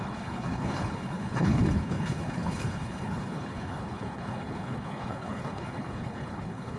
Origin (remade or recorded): remade